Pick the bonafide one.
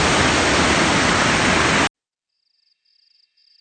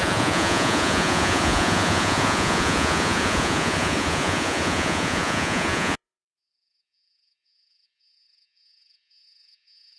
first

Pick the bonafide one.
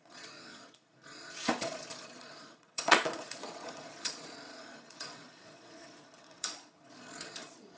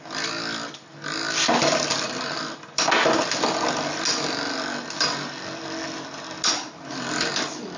second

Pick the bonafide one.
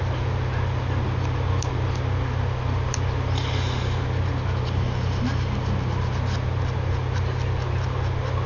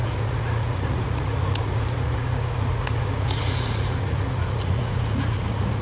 first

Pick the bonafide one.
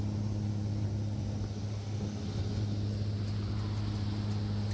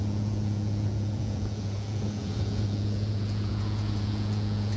first